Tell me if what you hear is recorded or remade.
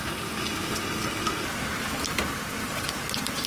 recorded